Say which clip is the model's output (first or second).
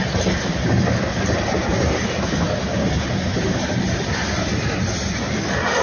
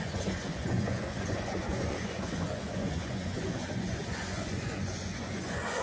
second